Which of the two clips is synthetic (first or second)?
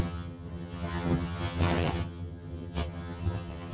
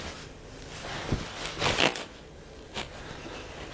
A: first